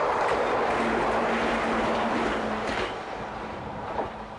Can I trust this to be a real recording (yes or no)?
no